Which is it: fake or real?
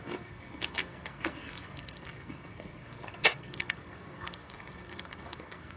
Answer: fake